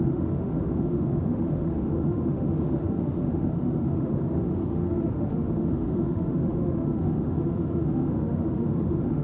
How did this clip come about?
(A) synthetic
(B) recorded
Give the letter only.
A